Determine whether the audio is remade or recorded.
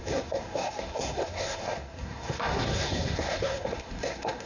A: remade